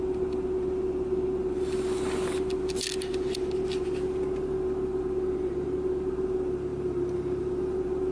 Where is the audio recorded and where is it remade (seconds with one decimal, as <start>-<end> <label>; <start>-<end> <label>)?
0.0-8.1 recorded